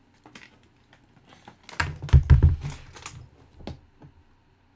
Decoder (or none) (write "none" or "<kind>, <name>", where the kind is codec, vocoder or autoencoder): none